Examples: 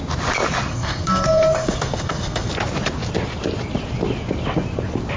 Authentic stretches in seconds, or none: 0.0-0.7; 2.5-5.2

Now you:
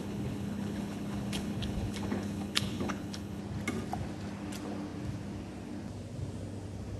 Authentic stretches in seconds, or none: 3.4-7.0

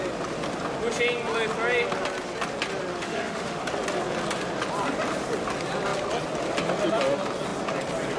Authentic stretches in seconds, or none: 0.0-2.9; 3.6-8.2